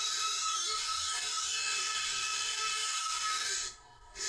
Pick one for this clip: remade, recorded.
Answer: remade